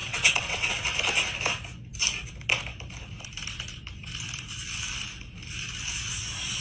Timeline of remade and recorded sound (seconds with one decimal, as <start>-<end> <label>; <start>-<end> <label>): 0.0-0.7 remade; 0.7-6.6 recorded